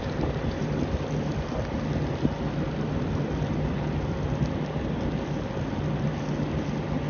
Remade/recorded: recorded